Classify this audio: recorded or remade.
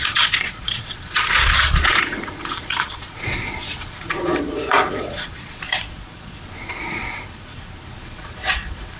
remade